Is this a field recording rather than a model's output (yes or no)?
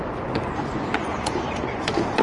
no